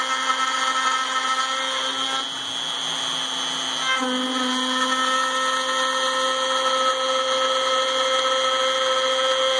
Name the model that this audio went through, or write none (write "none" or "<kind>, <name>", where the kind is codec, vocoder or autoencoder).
none